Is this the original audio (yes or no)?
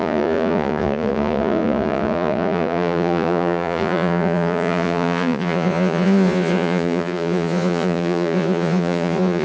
no